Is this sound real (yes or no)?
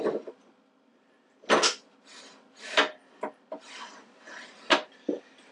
yes